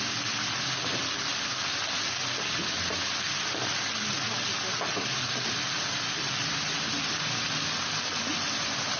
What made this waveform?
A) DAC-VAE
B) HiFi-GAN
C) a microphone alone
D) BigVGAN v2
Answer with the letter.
C